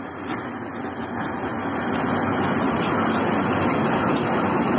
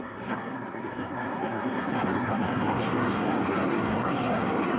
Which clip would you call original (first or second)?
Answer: first